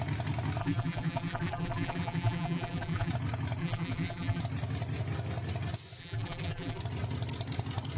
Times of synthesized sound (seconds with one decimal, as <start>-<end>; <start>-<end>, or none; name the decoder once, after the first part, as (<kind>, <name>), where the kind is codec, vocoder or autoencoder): 0.6-3.1 (vocoder, BigVGAN v2); 3.6-4.4; 6.0-6.8